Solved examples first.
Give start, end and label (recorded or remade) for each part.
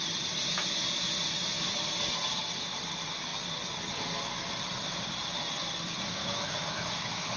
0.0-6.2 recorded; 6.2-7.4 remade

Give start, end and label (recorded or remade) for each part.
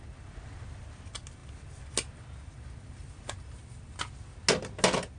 0.0-5.2 recorded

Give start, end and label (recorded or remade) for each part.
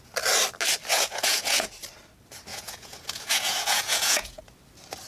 0.0-0.9 recorded; 0.9-1.7 remade; 1.7-2.5 recorded; 2.5-4.4 remade; 4.4-5.1 recorded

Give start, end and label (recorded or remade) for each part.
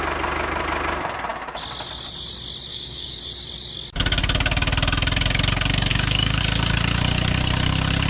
0.0-2.7 recorded; 2.7-3.2 remade; 3.2-5.9 recorded; 5.9-6.4 remade; 6.4-8.1 recorded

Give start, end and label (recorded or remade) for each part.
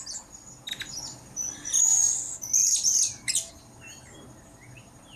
0.0-2.6 recorded; 2.6-3.5 remade; 3.5-5.2 recorded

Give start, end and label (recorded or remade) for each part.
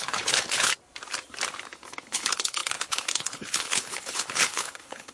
0.0-0.7 remade; 0.7-2.0 recorded; 2.0-5.1 remade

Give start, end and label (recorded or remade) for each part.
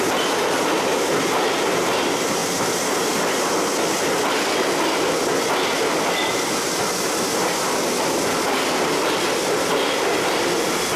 0.0-2.4 remade; 2.4-6.8 recorded; 6.8-11.0 remade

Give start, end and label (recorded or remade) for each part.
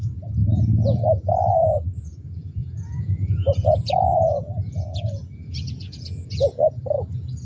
0.0-7.5 remade